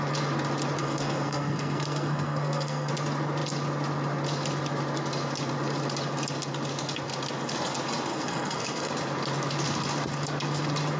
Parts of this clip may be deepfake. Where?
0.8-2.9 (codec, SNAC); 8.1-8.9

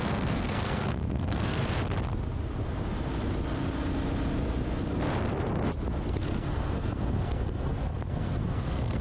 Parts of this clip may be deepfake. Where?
0.0-1.6 (codec, SNAC); 5.9-9.0

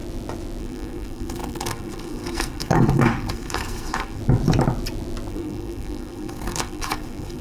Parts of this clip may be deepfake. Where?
0.6-4.2 (codec, SNAC); 5.3-7.4

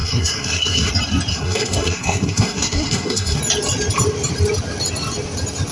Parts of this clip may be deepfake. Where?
0.0-0.9 (codec, SNAC); 1.3-3.4

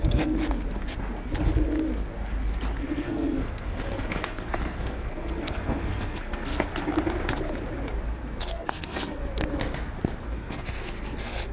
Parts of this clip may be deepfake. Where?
0.0-0.4 (codec, SNAC); 2.8-6.7; 8.4-9.2; 10.2-11.5